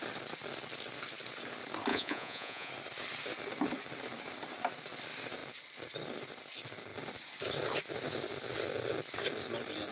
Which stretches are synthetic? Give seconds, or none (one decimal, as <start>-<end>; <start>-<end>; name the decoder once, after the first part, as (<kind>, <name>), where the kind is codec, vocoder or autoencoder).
1.9-2.7 (vocoder, Vocos)